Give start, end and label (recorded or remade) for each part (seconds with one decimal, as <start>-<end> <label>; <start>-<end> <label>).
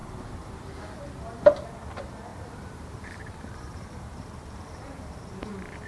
0.0-2.3 recorded; 2.3-5.5 remade; 5.5-5.9 recorded